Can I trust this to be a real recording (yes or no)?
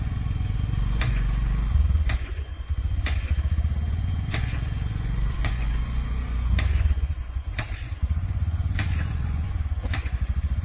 no